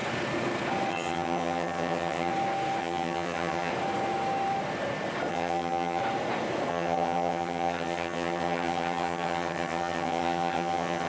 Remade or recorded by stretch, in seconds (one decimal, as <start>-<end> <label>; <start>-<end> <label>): 0.0-0.9 recorded; 0.9-2.3 remade; 2.3-2.8 recorded; 2.8-3.7 remade; 3.7-5.3 recorded; 5.3-6.0 remade; 6.0-6.7 recorded; 6.7-11.1 remade